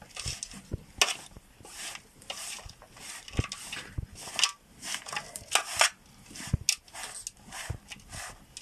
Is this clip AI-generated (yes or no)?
no